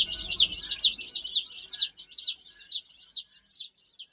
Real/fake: real